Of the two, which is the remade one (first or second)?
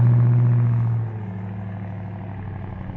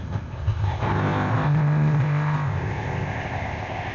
second